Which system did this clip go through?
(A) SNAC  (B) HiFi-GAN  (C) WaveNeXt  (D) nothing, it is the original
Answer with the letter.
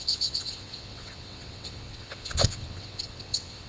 C